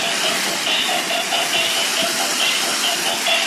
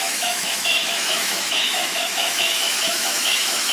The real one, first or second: first